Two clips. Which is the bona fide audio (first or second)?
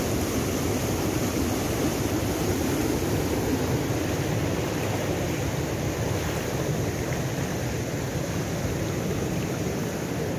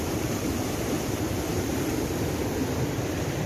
first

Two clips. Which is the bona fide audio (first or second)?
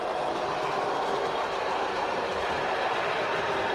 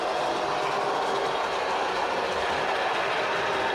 second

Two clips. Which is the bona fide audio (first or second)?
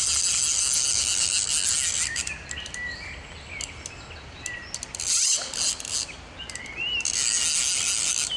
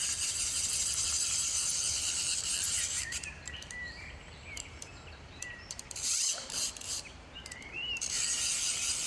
first